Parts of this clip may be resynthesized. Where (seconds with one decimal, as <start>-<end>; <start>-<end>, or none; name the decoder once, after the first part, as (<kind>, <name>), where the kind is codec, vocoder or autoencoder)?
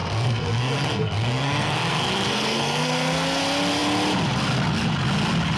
0.0-3.4 (codec, SNAC)